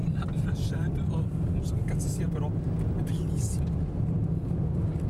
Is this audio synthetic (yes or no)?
no